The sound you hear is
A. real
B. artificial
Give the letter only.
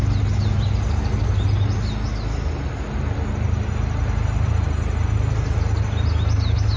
A